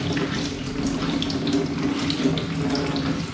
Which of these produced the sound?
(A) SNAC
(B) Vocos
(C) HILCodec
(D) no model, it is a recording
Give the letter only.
D